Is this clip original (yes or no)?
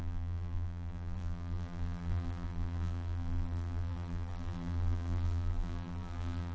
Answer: no